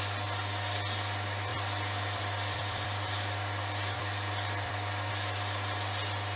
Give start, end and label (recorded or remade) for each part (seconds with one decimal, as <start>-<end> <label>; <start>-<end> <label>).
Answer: 0.0-1.5 recorded; 1.5-5.1 remade; 5.1-6.4 recorded

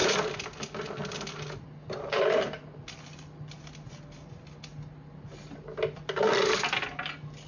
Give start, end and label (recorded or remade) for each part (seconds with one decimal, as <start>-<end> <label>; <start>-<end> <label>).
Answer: 0.0-7.5 recorded

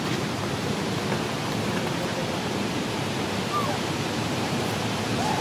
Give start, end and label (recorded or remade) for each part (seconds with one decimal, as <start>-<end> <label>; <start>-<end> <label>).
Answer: 0.0-4.2 recorded; 4.2-5.4 remade

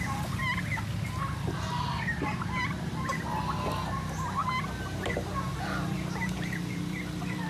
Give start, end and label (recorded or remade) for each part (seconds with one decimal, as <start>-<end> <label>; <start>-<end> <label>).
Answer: 0.0-5.5 recorded; 5.5-7.5 remade

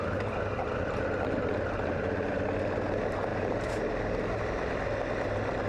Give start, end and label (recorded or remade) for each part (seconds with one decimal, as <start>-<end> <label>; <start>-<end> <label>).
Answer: 0.0-3.3 recorded; 3.3-3.9 remade; 3.9-5.7 recorded

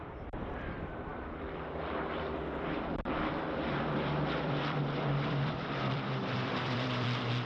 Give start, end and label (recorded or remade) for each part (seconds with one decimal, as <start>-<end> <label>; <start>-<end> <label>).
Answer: 0.0-7.5 remade

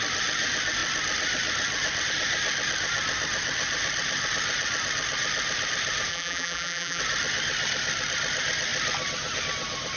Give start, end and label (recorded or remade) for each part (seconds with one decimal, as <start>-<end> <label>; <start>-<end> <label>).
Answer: 0.0-6.1 recorded; 6.1-7.0 remade; 7.0-10.0 recorded